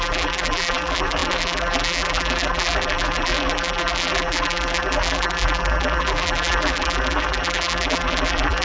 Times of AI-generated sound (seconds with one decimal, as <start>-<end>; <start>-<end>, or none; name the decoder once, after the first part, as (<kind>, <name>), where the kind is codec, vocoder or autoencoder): 0.0-8.6 (vocoder, BigVGAN v2)